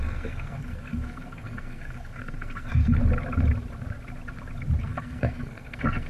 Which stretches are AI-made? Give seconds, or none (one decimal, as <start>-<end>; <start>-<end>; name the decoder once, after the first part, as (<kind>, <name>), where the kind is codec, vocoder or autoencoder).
0.0-3.0 (codec, SNAC); 4.8-6.1